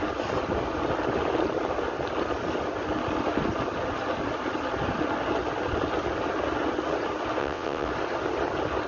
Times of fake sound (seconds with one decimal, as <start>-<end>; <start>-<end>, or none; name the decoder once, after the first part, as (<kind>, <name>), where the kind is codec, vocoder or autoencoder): 7.4-7.9 (vocoder, WaveNeXt)